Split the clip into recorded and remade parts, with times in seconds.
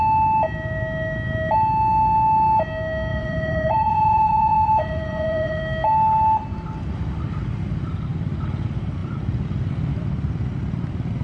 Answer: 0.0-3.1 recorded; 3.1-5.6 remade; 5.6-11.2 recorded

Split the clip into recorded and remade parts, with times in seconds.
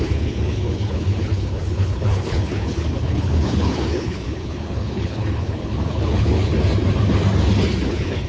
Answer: 0.0-6.5 remade; 6.5-7.9 recorded; 7.9-8.3 remade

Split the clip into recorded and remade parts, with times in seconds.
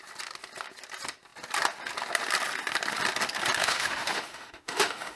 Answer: 0.0-3.6 recorded; 3.6-5.2 remade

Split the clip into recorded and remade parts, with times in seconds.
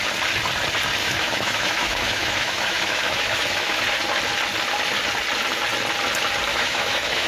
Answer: 0.0-1.0 recorded; 1.0-3.8 remade; 3.8-6.5 recorded; 6.5-7.3 remade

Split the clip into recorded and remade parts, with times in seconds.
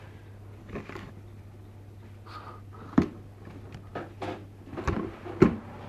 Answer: 0.0-0.6 recorded; 0.6-1.1 remade; 1.1-5.9 recorded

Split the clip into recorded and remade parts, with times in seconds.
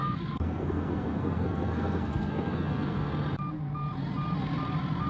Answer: 0.0-3.1 remade; 3.1-5.1 recorded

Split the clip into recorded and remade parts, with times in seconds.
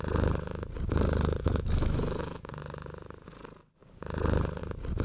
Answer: 0.0-1.4 recorded; 1.4-2.5 remade; 2.5-5.0 recorded